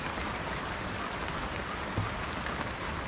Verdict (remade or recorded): recorded